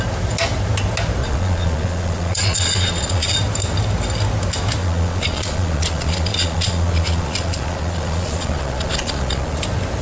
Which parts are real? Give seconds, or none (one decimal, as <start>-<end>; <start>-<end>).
0.0-1.2; 3.3-4.8; 9.6-10.0